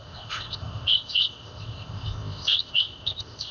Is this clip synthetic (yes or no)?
yes